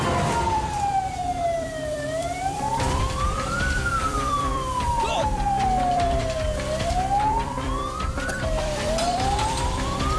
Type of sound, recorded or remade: remade